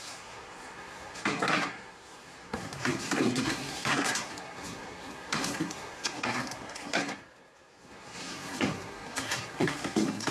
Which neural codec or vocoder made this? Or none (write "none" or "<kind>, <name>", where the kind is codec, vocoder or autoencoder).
codec, SNAC